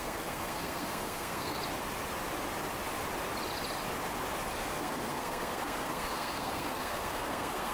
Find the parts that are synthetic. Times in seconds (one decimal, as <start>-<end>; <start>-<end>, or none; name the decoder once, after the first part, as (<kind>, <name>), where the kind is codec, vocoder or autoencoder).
0.0-1.6 (codec, SNAC); 4.5-7.7